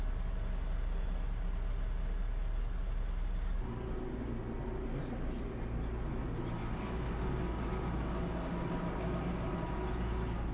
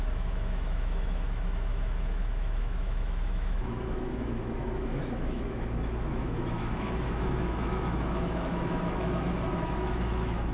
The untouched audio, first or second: first